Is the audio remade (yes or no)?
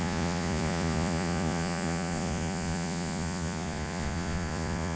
yes